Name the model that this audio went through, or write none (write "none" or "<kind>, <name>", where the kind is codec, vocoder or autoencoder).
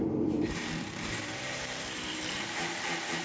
vocoder, BigVGAN v2